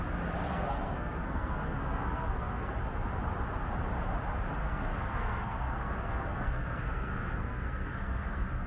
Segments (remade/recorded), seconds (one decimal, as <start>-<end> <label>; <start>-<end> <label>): 0.0-0.5 recorded; 0.5-2.7 remade; 2.7-4.6 recorded; 4.6-8.7 remade

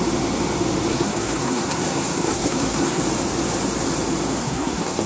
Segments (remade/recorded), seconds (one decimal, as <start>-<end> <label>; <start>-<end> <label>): 0.0-0.9 recorded; 0.9-3.0 remade; 3.0-4.4 recorded; 4.4-5.1 remade

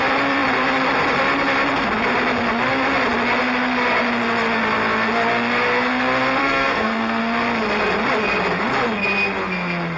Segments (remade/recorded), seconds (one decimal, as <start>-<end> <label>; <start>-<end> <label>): 0.0-6.4 recorded; 6.4-7.2 remade; 7.2-10.0 recorded